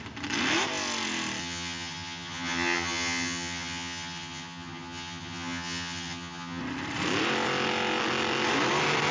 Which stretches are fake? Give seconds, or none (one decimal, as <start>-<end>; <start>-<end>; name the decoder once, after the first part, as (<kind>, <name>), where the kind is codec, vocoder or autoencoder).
1.4-6.6 (vocoder, HiFi-GAN)